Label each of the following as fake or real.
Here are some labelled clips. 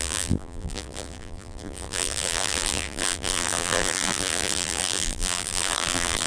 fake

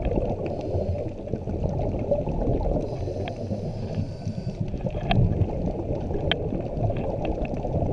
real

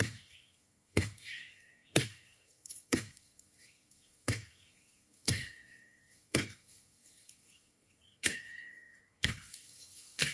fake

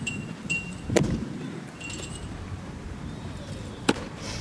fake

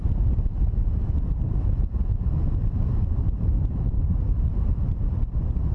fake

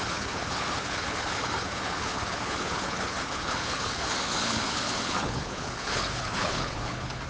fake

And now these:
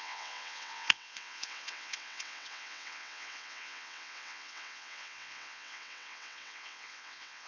fake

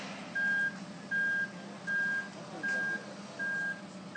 real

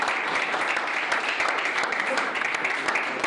real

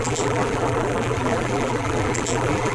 fake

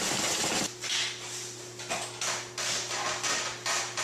real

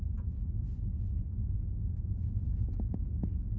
fake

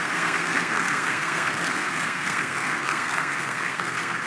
fake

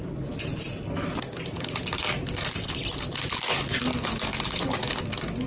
real